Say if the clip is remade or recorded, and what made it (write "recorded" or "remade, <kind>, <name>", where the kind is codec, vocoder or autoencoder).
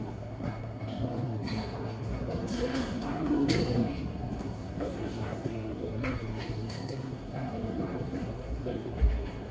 remade, codec, SNAC